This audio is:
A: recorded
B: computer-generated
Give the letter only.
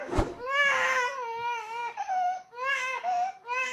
B